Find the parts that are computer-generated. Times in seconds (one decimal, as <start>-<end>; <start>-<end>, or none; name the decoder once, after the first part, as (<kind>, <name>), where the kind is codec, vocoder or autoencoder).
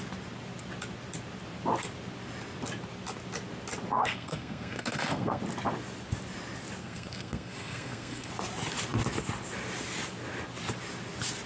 3.9-5.4 (codec, SNAC); 6.8-8.3